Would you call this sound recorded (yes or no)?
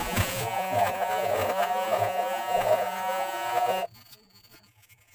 no